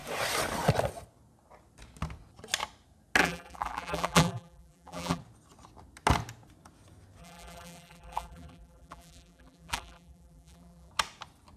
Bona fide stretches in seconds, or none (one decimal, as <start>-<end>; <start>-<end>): 0.0-3.2; 5.2-7.2; 10.9-11.6